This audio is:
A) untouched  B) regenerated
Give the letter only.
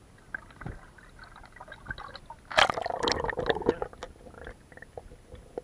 A